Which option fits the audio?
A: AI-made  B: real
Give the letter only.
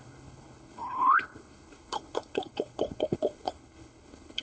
A